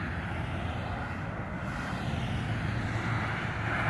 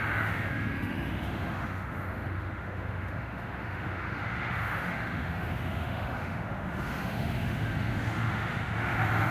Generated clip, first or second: second